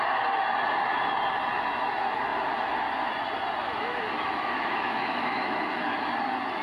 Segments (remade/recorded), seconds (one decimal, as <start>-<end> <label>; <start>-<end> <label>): 0.0-3.6 recorded; 3.6-6.1 remade; 6.1-6.6 recorded